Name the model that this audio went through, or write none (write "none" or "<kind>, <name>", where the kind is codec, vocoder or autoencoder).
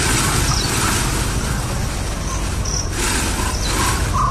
none